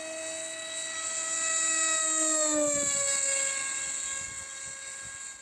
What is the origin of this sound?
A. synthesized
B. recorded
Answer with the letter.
B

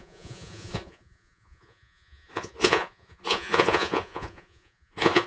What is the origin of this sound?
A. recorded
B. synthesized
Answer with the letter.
B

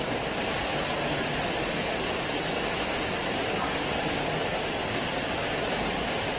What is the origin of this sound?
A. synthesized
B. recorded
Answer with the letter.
B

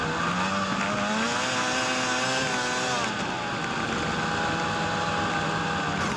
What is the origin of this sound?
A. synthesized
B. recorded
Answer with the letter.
B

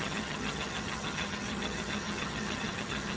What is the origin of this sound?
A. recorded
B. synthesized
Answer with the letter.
B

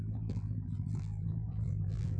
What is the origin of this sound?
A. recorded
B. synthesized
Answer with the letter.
B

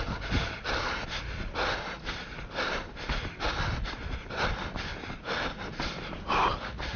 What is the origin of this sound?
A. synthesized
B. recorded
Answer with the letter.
B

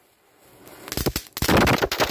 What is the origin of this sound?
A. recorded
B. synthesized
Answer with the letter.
A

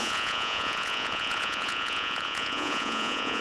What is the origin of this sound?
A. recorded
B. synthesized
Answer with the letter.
B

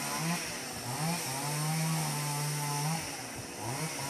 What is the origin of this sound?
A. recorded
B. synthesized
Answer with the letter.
A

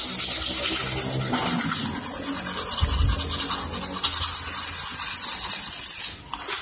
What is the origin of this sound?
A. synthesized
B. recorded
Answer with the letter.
B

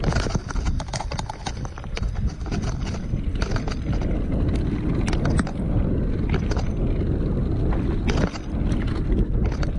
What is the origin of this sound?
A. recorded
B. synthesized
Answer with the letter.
A